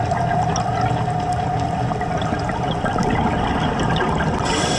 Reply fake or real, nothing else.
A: real